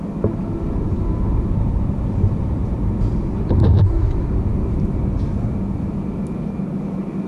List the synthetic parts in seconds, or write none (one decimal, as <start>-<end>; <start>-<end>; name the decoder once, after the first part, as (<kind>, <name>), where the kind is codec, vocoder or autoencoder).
1.3-5.0 (vocoder, BigVGAN v2)